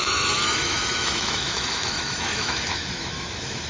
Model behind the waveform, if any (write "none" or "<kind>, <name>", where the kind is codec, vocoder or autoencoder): autoencoder, DAC-VAE